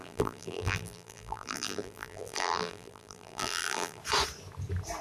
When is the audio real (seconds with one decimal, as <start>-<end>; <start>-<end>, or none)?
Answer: 4.0-5.0